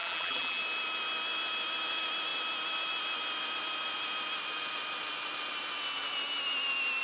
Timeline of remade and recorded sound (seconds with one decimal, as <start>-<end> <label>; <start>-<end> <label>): 0.0-0.6 remade; 0.6-7.0 recorded